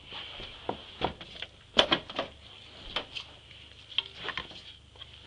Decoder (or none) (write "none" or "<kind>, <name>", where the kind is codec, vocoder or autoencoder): none